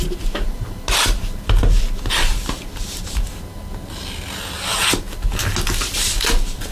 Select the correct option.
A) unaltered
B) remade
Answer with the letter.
A